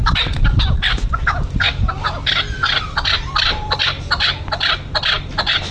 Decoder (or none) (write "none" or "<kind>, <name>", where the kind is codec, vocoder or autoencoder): none